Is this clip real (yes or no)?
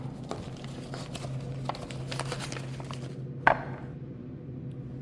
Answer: yes